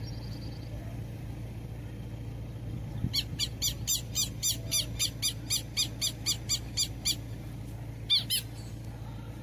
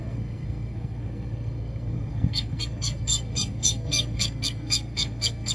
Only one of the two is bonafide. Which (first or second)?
first